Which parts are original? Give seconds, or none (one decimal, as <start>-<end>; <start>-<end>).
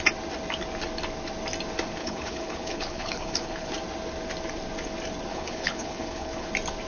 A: 0.0-2.0; 3.7-5.3; 6.5-6.9